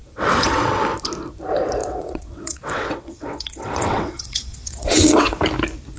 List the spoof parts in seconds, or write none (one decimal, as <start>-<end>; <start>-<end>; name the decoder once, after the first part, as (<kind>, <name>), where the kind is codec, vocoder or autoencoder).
0.0-0.8 (vocoder, WaveNeXt); 1.8-5.4